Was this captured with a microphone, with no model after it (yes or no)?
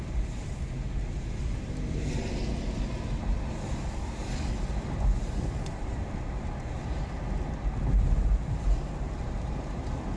yes